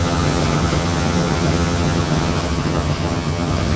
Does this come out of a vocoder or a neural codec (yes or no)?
yes